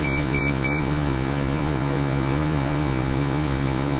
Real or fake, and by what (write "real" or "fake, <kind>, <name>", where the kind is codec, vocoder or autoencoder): fake, vocoder, Vocos